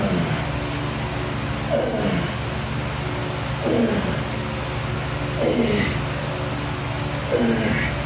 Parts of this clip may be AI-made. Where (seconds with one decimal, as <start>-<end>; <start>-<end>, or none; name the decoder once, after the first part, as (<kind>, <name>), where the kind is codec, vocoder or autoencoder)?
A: none